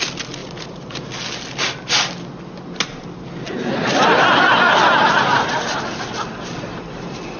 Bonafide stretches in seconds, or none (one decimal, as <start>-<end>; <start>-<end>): 0.0-0.4; 1.1-7.4